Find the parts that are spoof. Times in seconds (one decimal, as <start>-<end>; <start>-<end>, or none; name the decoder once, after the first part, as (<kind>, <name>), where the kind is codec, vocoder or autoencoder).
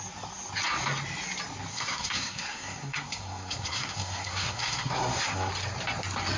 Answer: 1.7-5.5 (codec, SNAC)